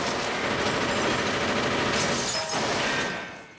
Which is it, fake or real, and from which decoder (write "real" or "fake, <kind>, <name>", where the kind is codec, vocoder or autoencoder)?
real